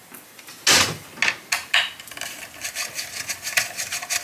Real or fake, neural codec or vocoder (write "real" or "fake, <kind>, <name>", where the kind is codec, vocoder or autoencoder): real